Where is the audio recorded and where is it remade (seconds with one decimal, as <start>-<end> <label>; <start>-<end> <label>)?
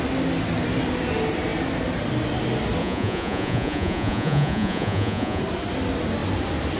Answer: 0.0-2.8 recorded; 2.8-5.4 remade; 5.4-6.8 recorded